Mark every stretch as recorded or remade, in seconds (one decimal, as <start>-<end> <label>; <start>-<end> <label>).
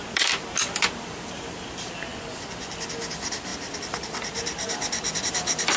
0.0-2.1 recorded; 2.1-2.8 remade; 2.8-5.8 recorded